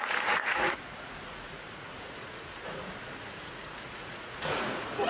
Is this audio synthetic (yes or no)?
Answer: yes